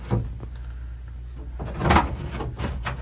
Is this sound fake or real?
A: real